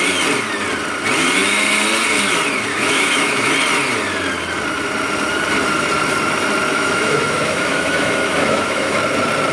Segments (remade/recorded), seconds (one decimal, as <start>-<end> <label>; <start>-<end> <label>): 0.0-2.7 recorded; 2.7-3.5 remade; 3.5-6.7 recorded; 6.7-9.0 remade; 9.0-9.5 recorded